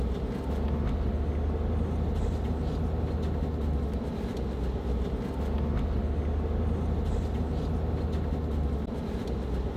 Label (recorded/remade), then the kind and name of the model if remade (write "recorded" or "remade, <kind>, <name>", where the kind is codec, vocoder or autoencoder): recorded